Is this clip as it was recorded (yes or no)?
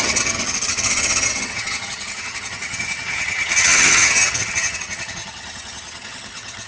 no